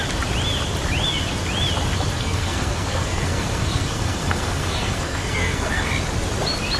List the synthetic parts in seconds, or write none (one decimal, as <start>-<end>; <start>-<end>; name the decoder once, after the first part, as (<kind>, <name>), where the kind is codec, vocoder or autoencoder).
2.1-5.9 (codec, SNAC)